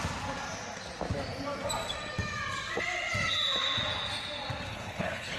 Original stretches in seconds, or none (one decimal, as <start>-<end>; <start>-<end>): 0.0-4.7

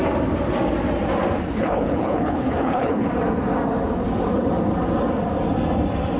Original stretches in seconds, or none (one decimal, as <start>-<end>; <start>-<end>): 0.0-1.5; 3.1-6.2

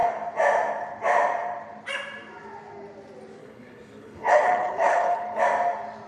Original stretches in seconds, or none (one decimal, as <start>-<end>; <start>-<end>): 0.0-3.4; 5.4-6.1

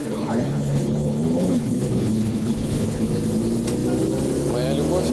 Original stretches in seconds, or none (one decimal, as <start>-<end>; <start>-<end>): 3.1-5.1

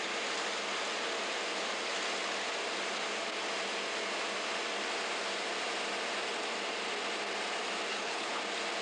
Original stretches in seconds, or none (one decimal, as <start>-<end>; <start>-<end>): 0.0-7.9; 8.4-8.8

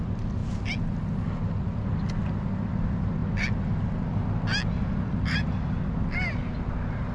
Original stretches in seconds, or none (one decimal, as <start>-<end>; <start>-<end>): 0.0-7.1